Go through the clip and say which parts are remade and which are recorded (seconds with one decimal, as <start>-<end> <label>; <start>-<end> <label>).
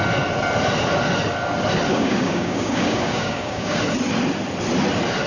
0.0-1.9 recorded; 1.9-3.8 remade; 3.8-5.3 recorded